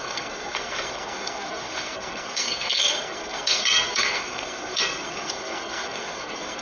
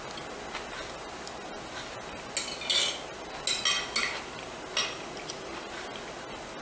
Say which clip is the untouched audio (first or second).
second